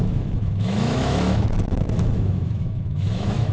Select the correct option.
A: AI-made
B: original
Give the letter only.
A